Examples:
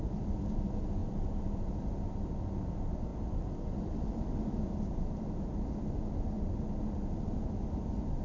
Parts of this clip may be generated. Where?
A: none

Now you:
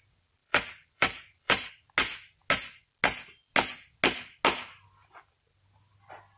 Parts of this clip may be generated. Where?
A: 0.4-1.7 (vocoder, BigVGAN v2)

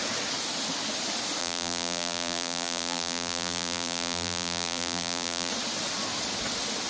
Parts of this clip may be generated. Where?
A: 1.4-5.5 (vocoder, BigVGAN v2)

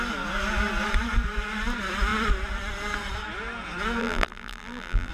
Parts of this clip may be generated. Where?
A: 4.0-5.1 (vocoder, BigVGAN v2)

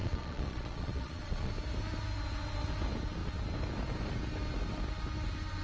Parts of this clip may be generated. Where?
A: 0.0-1.5 (vocoder, Vocos)

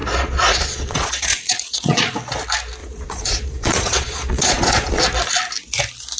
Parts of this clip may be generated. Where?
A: 0.0-2.1 (vocoder, Vocos); 2.8-5.0

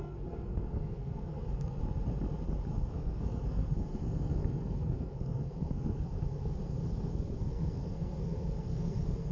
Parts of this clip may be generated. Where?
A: 0.0-1.8 (codec, SNAC); 2.7-9.3